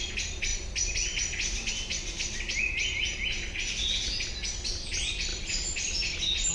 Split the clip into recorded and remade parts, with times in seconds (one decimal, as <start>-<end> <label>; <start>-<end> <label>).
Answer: 0.0-6.5 recorded

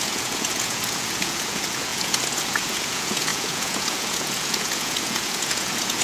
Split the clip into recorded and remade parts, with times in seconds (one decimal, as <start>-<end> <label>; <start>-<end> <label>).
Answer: 0.0-6.0 remade

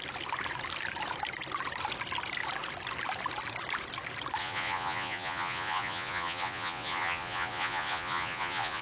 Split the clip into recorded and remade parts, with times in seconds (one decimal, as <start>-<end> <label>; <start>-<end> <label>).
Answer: 0.0-4.4 recorded; 4.4-8.8 remade